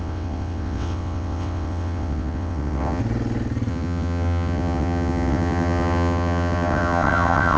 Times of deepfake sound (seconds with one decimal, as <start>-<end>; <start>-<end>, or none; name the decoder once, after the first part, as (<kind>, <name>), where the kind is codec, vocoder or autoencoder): 0.0-3.0 (vocoder, WaveNeXt); 3.7-7.6